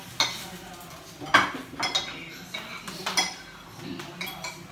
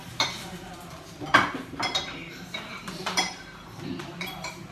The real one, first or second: first